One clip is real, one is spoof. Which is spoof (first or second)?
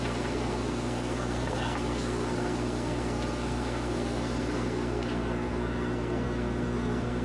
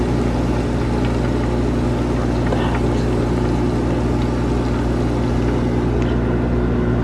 first